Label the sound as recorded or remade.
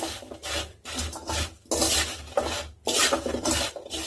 recorded